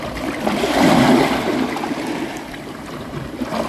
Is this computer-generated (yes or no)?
no